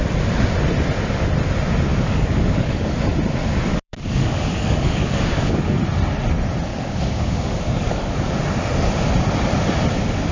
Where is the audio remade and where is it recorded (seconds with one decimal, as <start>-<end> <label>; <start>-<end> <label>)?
0.0-1.9 recorded; 1.9-3.0 remade; 3.0-3.7 recorded; 3.7-5.8 remade; 5.8-6.7 recorded; 6.7-8.4 remade; 8.4-10.3 recorded